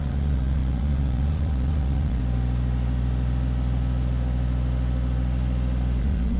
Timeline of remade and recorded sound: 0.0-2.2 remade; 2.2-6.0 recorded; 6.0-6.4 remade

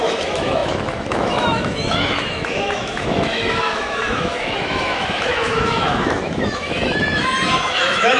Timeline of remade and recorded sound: 0.0-8.2 remade

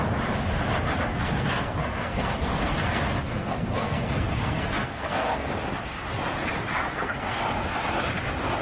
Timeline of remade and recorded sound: 0.0-1.1 recorded; 1.1-5.5 remade; 5.5-6.9 recorded; 6.9-7.4 remade; 7.4-8.6 recorded

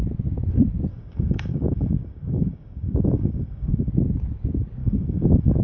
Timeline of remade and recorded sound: 0.0-0.9 recorded; 0.9-3.9 remade; 3.9-4.8 recorded; 4.8-5.6 remade

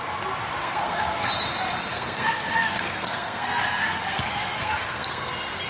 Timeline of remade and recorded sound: 0.0-0.6 recorded; 0.6-1.3 remade; 1.3-1.9 recorded; 1.9-5.3 remade; 5.3-5.7 recorded